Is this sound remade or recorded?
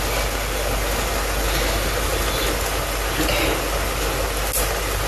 recorded